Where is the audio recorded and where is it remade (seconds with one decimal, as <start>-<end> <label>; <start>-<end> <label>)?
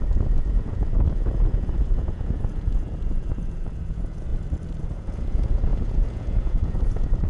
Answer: 0.0-4.3 remade; 4.3-4.8 recorded; 4.8-7.3 remade